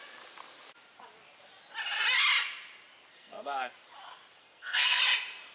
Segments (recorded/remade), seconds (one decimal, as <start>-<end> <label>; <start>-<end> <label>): 0.0-3.1 recorded; 3.1-3.7 remade; 3.7-4.4 recorded; 4.4-5.0 remade; 5.0-5.5 recorded